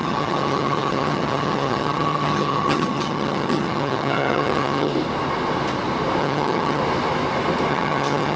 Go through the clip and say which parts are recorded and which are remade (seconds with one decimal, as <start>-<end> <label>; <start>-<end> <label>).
0.0-4.9 remade; 4.9-6.2 recorded; 6.2-6.8 remade; 6.8-7.7 recorded; 7.7-8.4 remade